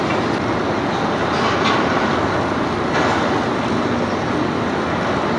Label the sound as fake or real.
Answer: real